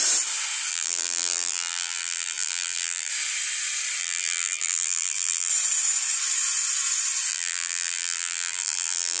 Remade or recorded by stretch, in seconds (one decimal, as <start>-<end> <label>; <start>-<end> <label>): 0.0-0.7 recorded; 0.7-3.1 remade; 3.1-4.0 recorded; 4.0-5.5 remade; 5.5-7.3 recorded; 7.3-9.2 remade